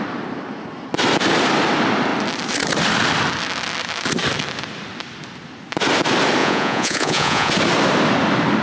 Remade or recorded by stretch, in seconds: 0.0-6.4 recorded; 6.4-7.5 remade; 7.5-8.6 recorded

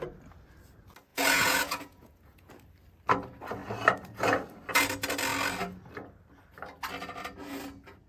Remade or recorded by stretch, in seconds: 0.0-1.1 recorded; 1.1-2.5 remade; 2.5-8.1 recorded

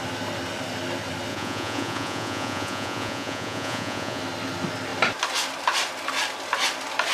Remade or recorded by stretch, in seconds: 0.0-1.3 recorded; 1.3-4.2 remade; 4.2-7.1 recorded

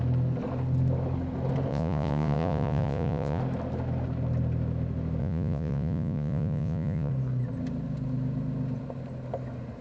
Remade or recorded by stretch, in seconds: 0.0-1.7 recorded; 1.7-3.4 remade; 3.4-5.2 recorded; 5.2-7.1 remade; 7.1-9.8 recorded

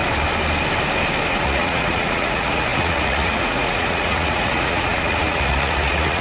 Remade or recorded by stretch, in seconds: 0.0-1.3 recorded; 1.3-6.2 remade